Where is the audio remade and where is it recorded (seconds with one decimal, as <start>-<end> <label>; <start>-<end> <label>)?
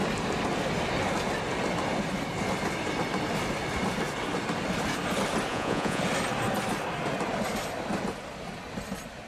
0.0-5.5 recorded; 5.5-6.0 remade; 6.0-9.3 recorded